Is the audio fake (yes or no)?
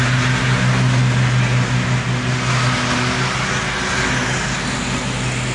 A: no